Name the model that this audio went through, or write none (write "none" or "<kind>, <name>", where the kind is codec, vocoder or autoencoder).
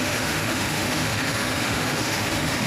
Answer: autoencoder, DAC-VAE